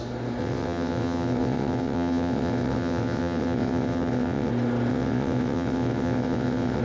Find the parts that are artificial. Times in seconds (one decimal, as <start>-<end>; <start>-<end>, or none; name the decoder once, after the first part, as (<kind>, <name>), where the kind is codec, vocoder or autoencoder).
0.4-4.5 (vocoder, WaveNeXt); 4.9-6.8

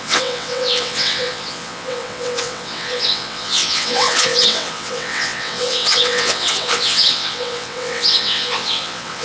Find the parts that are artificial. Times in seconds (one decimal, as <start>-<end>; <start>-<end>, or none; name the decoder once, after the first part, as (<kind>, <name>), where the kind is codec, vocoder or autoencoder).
0.0-9.2 (vocoder, WaveNeXt)

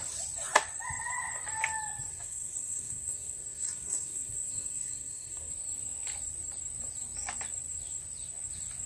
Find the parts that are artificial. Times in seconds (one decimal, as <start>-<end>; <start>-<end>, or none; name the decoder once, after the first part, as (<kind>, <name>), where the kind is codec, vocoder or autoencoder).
2.1-5.5 (codec, SNAC)

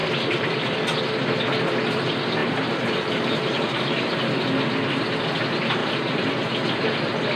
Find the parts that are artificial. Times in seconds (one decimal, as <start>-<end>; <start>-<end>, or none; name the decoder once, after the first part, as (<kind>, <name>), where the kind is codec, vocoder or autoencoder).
2.4-4.1 (vocoder, BigVGAN v2); 5.8-6.3

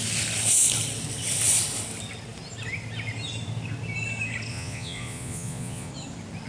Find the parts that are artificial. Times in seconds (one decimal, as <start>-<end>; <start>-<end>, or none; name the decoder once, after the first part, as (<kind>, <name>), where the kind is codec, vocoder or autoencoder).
4.5-5.9 (vocoder, Vocos)